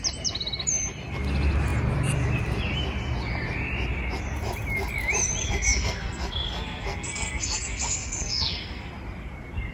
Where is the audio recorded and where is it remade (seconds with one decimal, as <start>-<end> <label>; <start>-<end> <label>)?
0.0-5.4 recorded; 5.4-8.9 remade; 8.9-9.7 recorded